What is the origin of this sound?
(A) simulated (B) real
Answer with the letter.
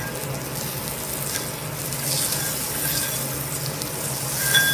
B